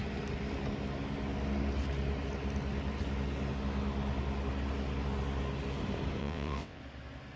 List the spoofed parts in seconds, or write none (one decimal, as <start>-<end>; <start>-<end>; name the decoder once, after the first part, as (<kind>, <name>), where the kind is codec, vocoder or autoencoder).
6.2-6.8 (vocoder, WaveNeXt)